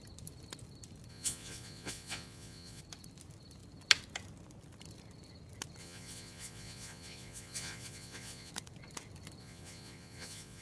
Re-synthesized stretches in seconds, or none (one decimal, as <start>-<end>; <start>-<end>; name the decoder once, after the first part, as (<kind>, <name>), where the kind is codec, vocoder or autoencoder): 1.1-2.8 (vocoder, Vocos); 5.8-8.5; 9.4-10.6